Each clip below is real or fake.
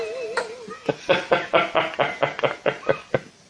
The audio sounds real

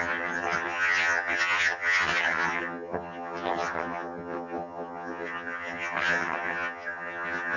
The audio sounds fake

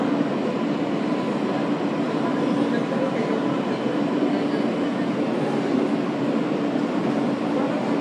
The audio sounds real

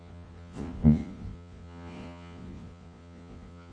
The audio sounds fake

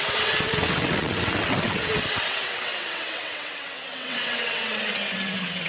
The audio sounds fake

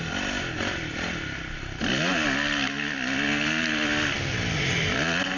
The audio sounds real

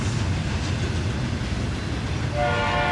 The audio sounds real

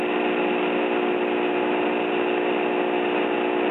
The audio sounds real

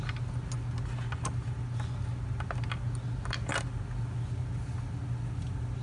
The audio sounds real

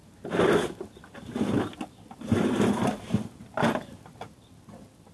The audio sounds real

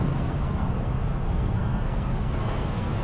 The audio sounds fake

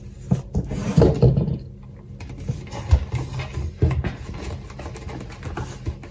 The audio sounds real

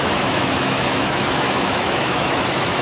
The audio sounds fake